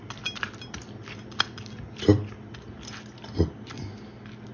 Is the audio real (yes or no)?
yes